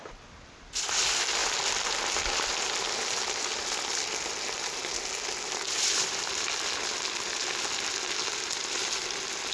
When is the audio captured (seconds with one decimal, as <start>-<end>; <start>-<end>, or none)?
0.0-9.5